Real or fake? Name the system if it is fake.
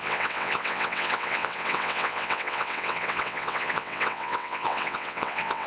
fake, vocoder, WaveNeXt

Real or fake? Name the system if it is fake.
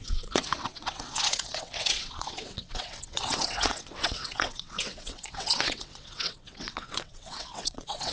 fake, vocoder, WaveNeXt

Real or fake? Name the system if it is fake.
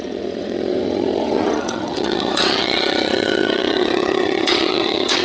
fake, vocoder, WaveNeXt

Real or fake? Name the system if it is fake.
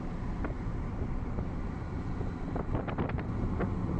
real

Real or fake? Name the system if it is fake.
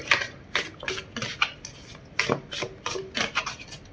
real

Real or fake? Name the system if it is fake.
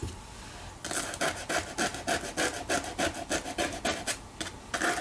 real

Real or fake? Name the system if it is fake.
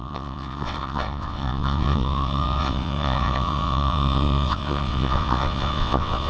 fake, vocoder, WaveNeXt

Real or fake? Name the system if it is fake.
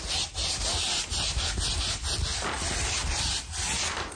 real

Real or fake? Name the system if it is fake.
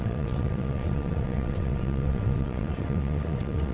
fake, vocoder, WaveNeXt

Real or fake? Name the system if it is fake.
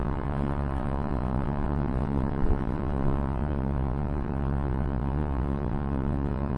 fake, vocoder, WaveNeXt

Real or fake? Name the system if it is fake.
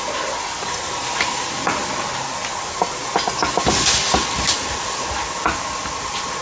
real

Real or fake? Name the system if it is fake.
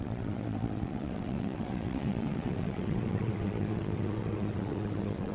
fake, vocoder, WaveNeXt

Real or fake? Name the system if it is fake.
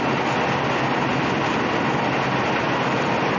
real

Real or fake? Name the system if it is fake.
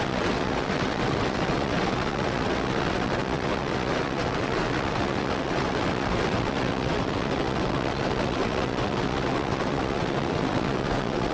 fake, vocoder, WaveNeXt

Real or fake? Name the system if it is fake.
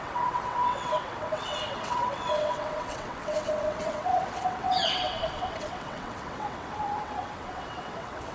fake, vocoder, WaveNeXt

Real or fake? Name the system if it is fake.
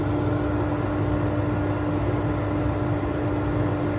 real